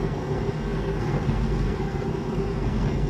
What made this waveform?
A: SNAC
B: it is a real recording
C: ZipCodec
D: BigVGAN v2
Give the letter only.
A